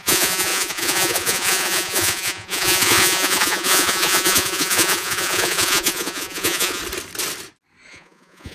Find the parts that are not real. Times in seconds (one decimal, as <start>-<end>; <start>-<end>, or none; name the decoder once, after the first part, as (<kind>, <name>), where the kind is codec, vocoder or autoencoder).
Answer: 0.0-6.8 (vocoder, Vocos); 7.9-8.5